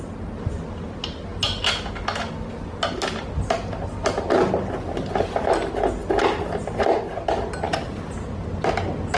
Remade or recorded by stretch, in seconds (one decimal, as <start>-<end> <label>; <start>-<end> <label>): 0.0-9.2 recorded